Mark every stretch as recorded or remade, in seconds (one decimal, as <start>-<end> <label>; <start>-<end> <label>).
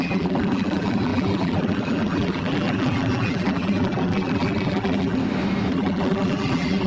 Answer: 0.0-5.2 remade; 5.2-5.7 recorded; 5.7-6.9 remade